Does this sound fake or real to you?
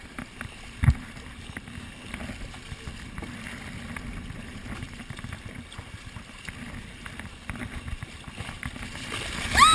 real